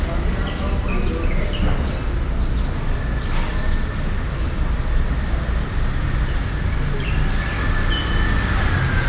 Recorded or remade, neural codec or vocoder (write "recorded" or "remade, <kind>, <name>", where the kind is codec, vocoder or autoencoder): recorded